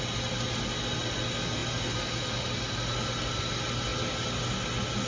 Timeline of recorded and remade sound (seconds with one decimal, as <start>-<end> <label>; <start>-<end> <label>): 0.0-5.1 recorded